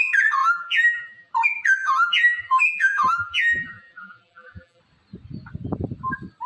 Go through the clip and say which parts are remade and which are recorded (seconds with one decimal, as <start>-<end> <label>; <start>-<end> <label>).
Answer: 0.0-0.4 recorded; 0.4-1.3 remade; 1.3-1.8 recorded; 1.8-4.8 remade; 4.8-6.5 recorded